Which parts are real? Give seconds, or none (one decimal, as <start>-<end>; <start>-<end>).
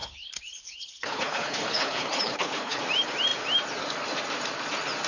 2.8-5.1